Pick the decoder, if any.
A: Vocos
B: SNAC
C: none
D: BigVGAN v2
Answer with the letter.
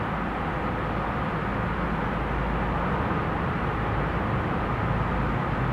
C